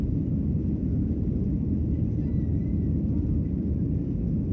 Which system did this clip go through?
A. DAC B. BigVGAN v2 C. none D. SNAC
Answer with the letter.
C